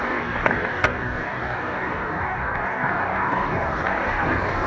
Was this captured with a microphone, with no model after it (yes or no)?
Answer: no